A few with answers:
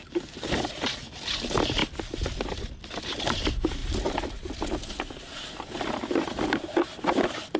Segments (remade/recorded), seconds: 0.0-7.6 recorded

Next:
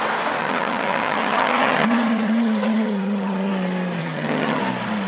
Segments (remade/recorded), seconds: 0.0-0.4 recorded; 0.4-3.5 remade; 3.5-4.0 recorded; 4.0-4.6 remade; 4.6-5.1 recorded

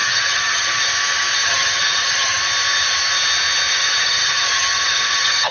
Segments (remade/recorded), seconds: 0.0-0.8 remade; 0.8-1.4 recorded; 1.4-2.4 remade; 2.4-3.7 recorded; 3.7-5.5 remade

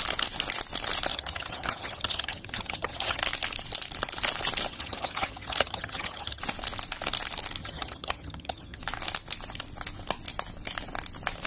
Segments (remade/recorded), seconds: 0.0-1.1 recorded; 1.1-3.2 remade; 3.2-4.7 recorded; 4.7-6.4 remade; 6.4-7.6 recorded; 7.6-8.8 remade; 8.8-11.5 recorded

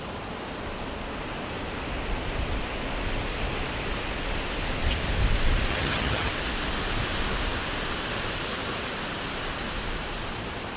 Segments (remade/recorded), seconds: 0.0-5.7 recorded; 5.7-6.3 remade; 6.3-10.8 recorded

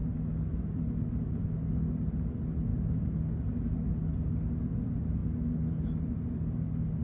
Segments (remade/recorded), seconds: 0.0-7.0 recorded

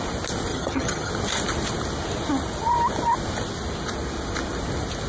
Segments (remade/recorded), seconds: 0.0-0.5 recorded; 0.5-1.1 remade; 1.1-5.1 recorded

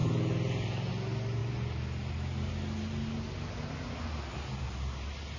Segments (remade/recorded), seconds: 0.0-5.4 recorded